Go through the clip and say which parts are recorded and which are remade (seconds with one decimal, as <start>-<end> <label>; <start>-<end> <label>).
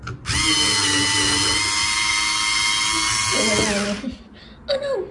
0.0-5.1 recorded